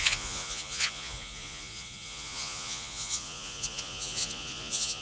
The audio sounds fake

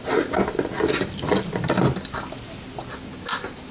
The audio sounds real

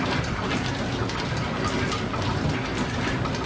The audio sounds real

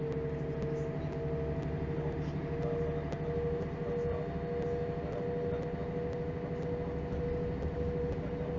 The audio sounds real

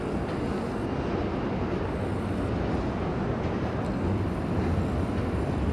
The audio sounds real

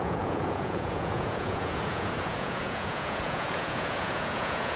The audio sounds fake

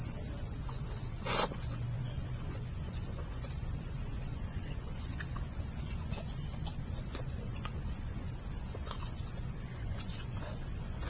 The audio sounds fake